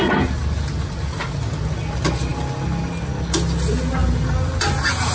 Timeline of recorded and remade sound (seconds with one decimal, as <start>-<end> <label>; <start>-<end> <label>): 0.0-5.1 recorded